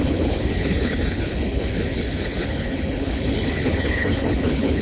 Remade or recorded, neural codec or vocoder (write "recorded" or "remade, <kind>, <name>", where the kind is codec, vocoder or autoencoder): remade, codec, HILCodec